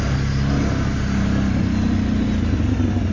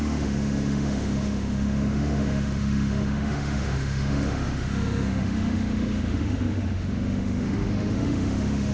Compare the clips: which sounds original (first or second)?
first